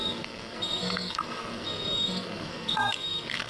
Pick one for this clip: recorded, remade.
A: remade